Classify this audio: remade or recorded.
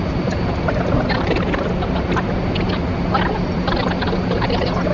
recorded